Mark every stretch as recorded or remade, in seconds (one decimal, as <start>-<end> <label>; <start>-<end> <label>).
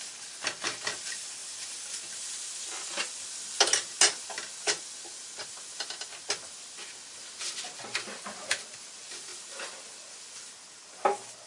0.0-11.5 recorded